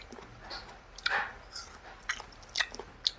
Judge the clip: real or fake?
real